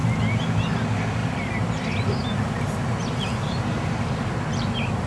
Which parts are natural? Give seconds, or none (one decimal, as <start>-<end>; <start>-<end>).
0.0-1.2; 4.3-5.1

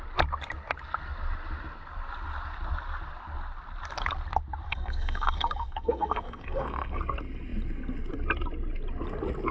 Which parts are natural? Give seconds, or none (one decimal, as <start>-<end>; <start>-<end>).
0.0-4.7; 7.0-9.5

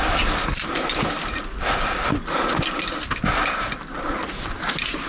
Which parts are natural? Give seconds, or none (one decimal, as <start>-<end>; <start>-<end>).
0.0-5.1

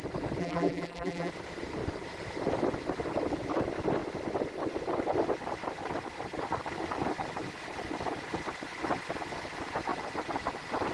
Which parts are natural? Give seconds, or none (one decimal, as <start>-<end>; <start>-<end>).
0.0-0.4; 1.3-10.9

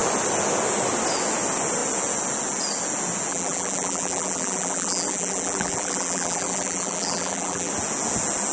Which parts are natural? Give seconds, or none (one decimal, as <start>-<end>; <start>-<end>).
0.0-3.3; 7.7-8.5

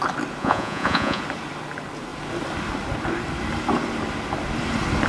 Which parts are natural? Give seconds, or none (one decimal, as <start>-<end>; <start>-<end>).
0.0-0.4; 1.2-5.1